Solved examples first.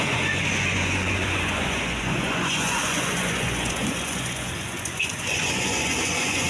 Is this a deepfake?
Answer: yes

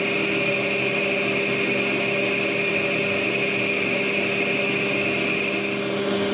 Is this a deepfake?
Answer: no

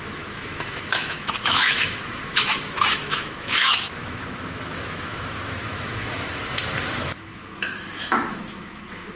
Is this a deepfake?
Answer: yes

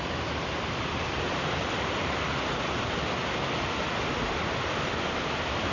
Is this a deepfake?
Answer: no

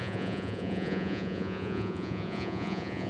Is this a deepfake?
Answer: yes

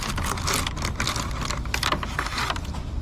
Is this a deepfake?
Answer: no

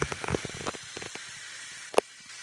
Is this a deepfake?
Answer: no